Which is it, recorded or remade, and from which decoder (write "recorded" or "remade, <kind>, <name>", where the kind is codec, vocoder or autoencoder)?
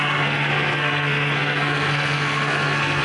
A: remade, codec, SNAC